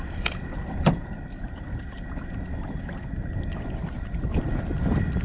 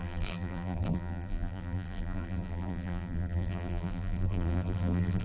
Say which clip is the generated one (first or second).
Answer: second